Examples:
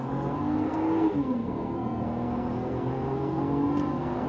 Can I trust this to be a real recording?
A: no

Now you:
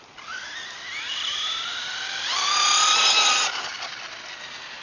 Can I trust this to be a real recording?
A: yes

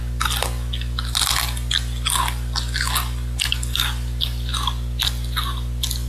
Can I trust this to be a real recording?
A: yes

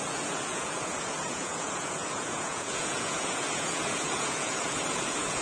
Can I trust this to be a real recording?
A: no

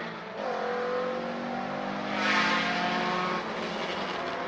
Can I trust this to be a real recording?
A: yes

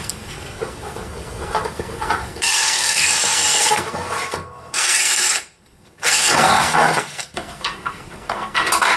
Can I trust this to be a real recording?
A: no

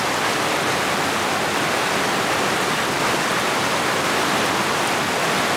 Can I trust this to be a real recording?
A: yes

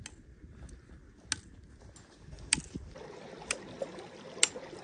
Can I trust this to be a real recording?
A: yes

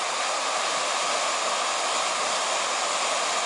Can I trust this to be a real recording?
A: yes